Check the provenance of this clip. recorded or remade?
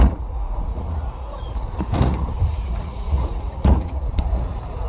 remade